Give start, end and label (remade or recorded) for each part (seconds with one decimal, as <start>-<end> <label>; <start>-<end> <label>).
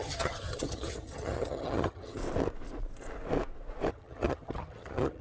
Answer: 0.0-2.2 remade; 2.2-3.9 recorded; 3.9-5.2 remade